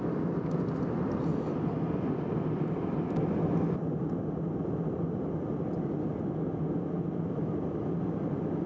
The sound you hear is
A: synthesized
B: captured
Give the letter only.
B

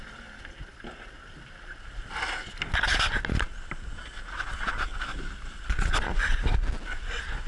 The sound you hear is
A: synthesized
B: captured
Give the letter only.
B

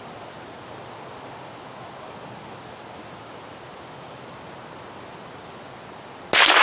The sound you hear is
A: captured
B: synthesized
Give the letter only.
A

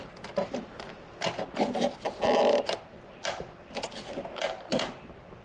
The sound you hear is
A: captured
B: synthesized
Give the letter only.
A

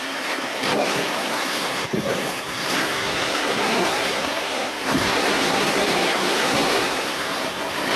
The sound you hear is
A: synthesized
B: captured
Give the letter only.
A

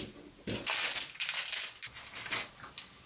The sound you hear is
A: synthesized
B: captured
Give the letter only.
B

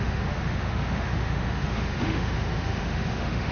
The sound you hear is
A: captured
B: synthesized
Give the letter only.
B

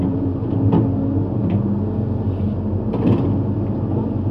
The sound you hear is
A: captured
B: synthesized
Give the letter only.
A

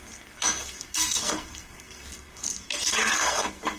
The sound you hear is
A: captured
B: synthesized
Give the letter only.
B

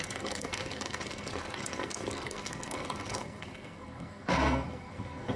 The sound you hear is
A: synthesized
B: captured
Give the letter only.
A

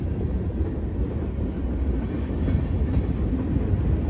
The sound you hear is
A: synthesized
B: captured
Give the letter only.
B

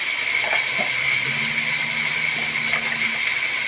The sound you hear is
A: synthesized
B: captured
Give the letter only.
B